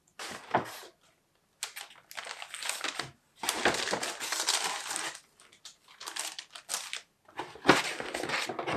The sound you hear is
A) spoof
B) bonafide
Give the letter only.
B